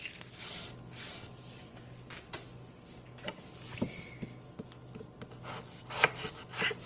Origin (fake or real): real